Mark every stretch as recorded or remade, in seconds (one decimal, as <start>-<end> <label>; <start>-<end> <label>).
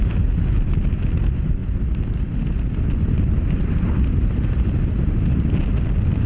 0.0-6.3 recorded